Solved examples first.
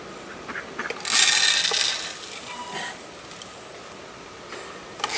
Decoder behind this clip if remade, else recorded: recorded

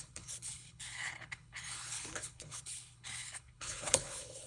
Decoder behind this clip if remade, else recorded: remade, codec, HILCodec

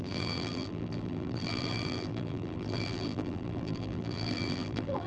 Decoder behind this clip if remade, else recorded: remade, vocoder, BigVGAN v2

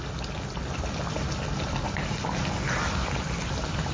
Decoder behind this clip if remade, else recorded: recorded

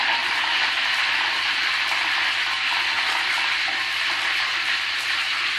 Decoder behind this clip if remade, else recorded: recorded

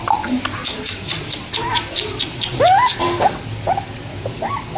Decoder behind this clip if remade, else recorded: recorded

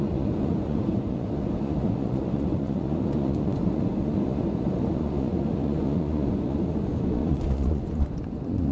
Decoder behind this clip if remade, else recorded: remade, vocoder, Vocos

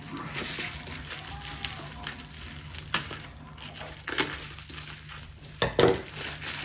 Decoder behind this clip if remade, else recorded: recorded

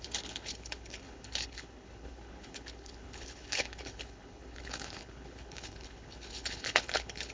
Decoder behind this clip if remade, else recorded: remade, codec, HILCodec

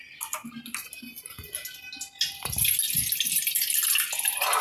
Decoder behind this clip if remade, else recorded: recorded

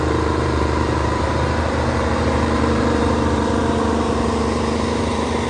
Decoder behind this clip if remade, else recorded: remade, vocoder, BigVGAN v2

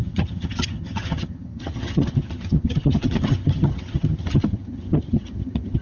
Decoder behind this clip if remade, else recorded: remade, vocoder, HiFi-GAN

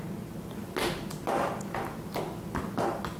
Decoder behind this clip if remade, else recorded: recorded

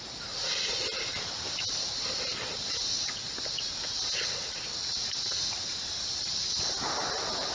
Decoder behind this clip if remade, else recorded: remade, vocoder, BigVGAN v2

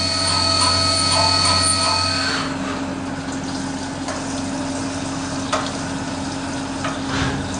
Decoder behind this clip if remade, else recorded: recorded